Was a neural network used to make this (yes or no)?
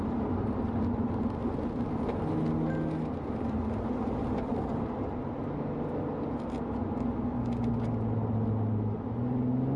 no